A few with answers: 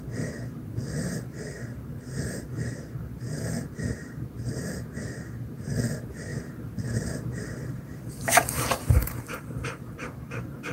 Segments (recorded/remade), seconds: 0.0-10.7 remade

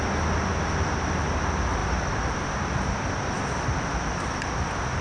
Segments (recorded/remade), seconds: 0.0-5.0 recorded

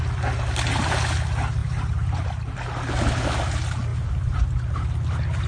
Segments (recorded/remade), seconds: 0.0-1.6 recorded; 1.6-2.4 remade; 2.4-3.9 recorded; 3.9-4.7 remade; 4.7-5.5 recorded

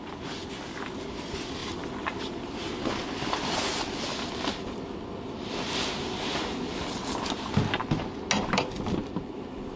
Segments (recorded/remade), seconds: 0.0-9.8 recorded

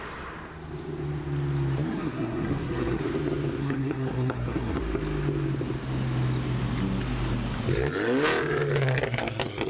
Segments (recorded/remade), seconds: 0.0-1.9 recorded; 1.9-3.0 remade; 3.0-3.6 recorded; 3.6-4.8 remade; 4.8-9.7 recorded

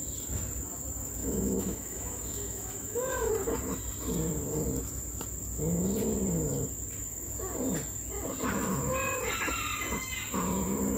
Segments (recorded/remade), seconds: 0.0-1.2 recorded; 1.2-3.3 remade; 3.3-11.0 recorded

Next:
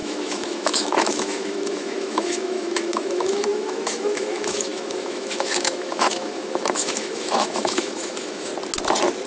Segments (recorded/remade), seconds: 0.0-8.5 remade; 8.5-9.3 recorded